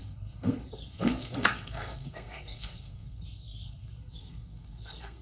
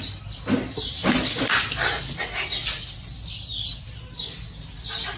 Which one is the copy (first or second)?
first